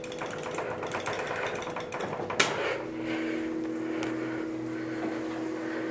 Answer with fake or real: real